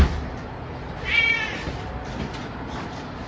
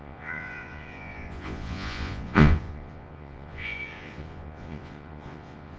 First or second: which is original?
first